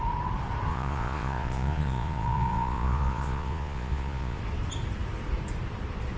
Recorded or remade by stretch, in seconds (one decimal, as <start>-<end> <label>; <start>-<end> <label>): 0.0-0.7 recorded; 0.7-4.4 remade; 4.4-6.2 recorded